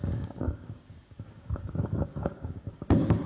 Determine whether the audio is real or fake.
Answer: fake